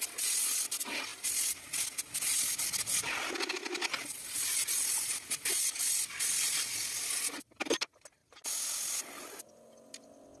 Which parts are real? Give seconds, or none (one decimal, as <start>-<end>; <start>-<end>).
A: 0.0-10.4